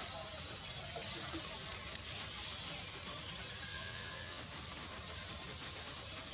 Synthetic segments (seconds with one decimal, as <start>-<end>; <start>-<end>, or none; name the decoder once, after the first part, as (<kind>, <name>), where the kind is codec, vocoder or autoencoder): 3.7-4.4 (vocoder, WaveNeXt)